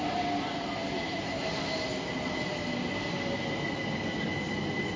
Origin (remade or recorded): recorded